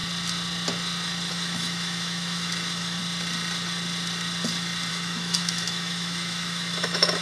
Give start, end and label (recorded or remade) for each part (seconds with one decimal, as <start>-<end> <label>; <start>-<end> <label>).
0.0-1.3 recorded; 1.3-3.0 remade; 3.0-4.9 recorded; 4.9-7.2 remade

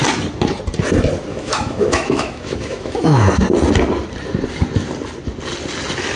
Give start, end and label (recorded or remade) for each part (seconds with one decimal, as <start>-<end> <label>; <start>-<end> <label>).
0.0-1.3 recorded; 1.3-3.3 remade; 3.3-6.2 recorded

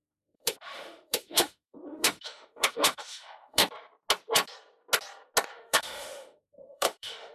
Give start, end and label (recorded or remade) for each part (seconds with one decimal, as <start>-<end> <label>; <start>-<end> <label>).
0.0-3.6 remade; 3.6-5.5 recorded; 5.5-7.3 remade

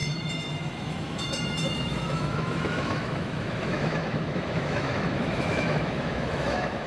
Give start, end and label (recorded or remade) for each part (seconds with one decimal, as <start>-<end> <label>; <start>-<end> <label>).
0.0-6.9 remade

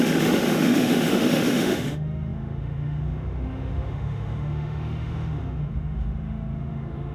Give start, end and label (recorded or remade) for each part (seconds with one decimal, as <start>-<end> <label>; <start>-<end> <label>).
0.0-7.1 remade

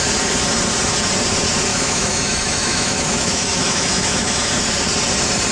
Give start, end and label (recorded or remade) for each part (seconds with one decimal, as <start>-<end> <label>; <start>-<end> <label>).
0.0-1.7 recorded; 1.7-4.5 remade; 4.5-5.5 recorded